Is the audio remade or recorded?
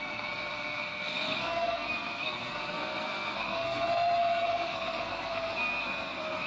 remade